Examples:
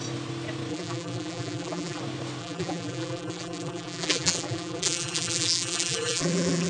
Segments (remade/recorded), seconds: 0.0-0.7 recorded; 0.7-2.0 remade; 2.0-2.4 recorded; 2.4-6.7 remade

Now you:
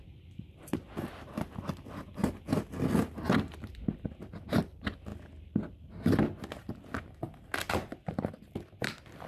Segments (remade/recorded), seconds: 0.0-2.2 remade; 2.2-4.3 recorded; 4.3-5.1 remade; 5.1-8.1 recorded; 8.1-9.3 remade

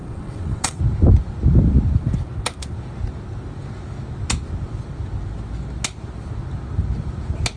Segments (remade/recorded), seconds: 0.0-0.8 remade; 0.8-7.6 recorded

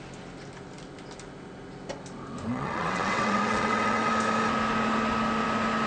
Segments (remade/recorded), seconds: 0.0-2.5 recorded; 2.5-4.1 remade; 4.1-5.9 recorded

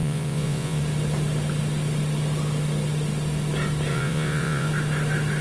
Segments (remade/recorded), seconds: 0.0-0.8 remade; 0.8-3.9 recorded; 3.9-4.7 remade; 4.7-5.4 recorded

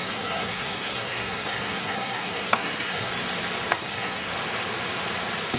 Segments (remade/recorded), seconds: 0.0-3.1 remade; 3.1-3.7 recorded; 3.7-4.3 remade; 4.3-5.6 recorded

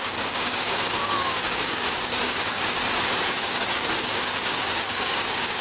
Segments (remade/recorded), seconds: 0.0-2.8 remade; 2.8-3.3 recorded; 3.3-5.6 remade